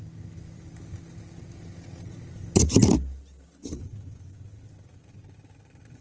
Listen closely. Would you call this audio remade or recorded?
recorded